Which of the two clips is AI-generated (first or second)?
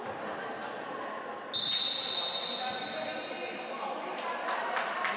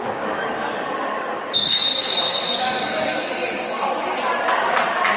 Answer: second